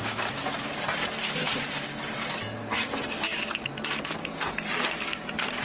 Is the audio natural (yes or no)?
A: yes